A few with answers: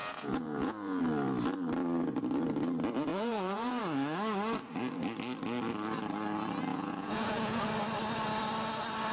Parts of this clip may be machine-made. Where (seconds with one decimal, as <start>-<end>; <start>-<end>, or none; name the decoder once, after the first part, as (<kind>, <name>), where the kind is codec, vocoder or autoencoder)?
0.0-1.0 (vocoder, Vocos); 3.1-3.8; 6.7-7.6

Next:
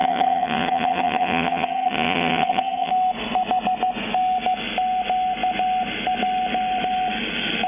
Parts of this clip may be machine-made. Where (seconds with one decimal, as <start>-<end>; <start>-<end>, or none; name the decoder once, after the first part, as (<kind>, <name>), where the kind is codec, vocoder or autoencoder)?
0.0-2.9 (vocoder, HiFi-GAN)

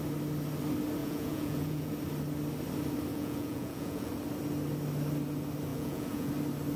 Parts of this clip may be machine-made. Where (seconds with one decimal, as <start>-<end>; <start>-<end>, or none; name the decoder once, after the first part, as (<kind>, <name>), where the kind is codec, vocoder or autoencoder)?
1.0-1.9 (vocoder, Vocos); 3.1-4.1; 5.7-6.3

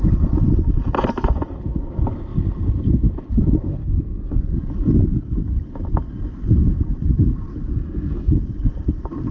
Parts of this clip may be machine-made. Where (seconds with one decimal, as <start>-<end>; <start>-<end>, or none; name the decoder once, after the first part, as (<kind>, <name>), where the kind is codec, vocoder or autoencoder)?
3.7-4.4 (codec, SNAC); 7.7-8.3

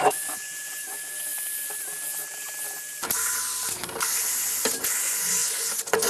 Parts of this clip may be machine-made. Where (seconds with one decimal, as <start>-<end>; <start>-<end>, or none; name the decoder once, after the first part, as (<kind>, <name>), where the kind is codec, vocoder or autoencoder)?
0.0-1.3 (vocoder, Vocos); 4.7-6.1

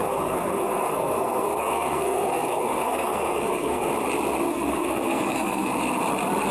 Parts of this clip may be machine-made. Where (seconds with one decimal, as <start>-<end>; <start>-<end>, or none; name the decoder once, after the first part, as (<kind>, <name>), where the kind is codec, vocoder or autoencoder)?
0.0-3.9 (codec, SNAC); 4.5-5.7